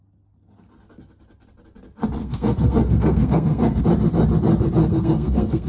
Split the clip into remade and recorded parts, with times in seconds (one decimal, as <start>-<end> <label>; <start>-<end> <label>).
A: 0.0-2.2 recorded; 2.2-3.8 remade; 3.8-4.8 recorded; 4.8-5.7 remade